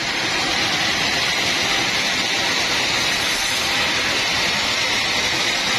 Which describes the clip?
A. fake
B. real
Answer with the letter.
B